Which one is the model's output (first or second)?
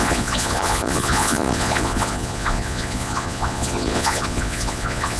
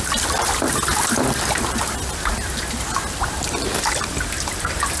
first